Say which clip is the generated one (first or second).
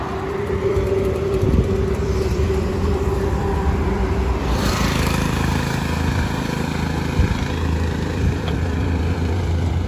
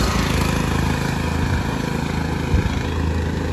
first